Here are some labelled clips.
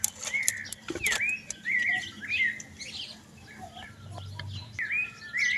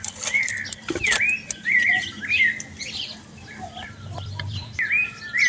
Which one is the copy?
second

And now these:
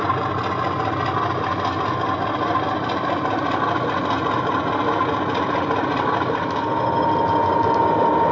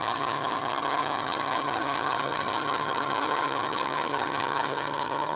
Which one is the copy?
second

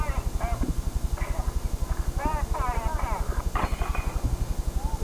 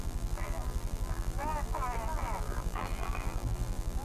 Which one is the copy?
second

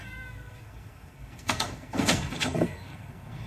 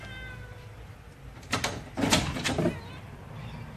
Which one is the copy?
first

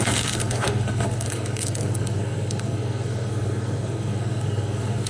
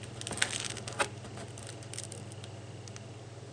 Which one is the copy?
first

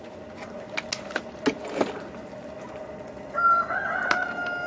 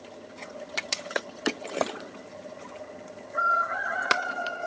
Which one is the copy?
second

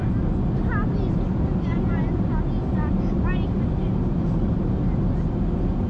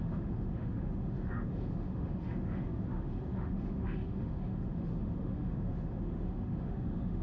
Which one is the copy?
second